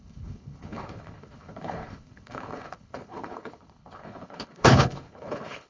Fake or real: fake